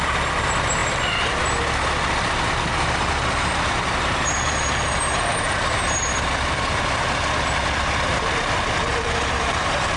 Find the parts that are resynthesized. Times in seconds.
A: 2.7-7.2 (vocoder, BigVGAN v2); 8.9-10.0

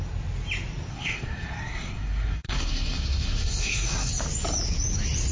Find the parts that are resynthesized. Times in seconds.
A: 0.9-4.1 (codec, SNAC)

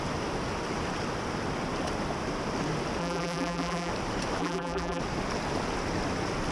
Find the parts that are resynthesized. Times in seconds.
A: 3.0-3.9 (vocoder, BigVGAN v2); 4.4-5.0

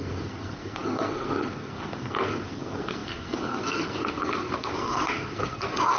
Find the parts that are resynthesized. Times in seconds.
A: 0.0-6.0 (codec, SNAC)

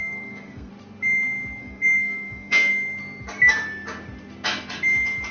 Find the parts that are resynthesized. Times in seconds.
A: 0.0-0.7 (codec, SNAC); 1.6-2.7

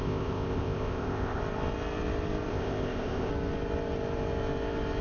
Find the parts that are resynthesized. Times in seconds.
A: 0.0-1.4 (codec, ZipCodec); 2.5-3.3

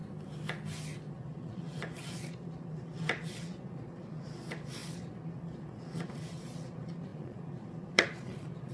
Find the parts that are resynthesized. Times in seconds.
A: 1.1-8.7 (vocoder, Vocos)

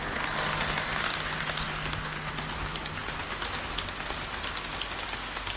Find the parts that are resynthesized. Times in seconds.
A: none